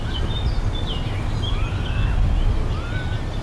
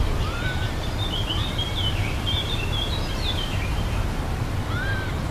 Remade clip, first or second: second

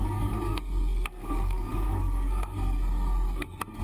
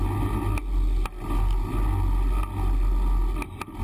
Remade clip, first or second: first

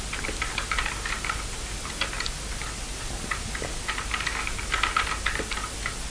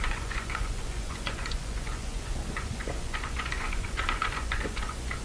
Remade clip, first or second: second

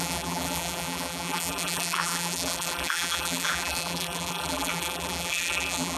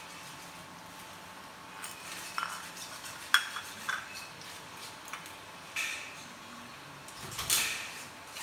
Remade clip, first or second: first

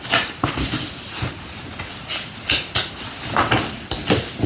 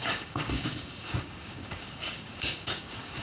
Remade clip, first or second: second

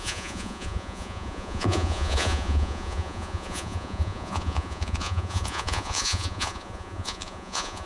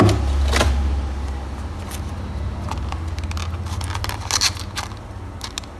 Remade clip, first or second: first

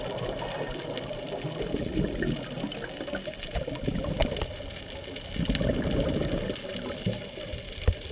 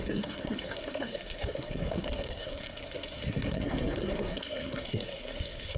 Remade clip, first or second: second